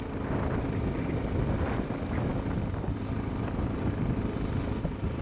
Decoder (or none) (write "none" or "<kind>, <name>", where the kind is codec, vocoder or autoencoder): none